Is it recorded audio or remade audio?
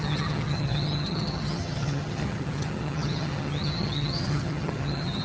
remade